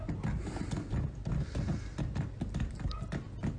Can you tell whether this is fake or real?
real